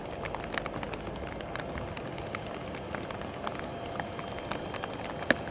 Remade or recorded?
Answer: recorded